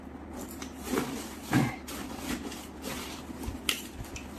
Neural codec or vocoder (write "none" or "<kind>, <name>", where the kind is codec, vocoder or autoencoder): none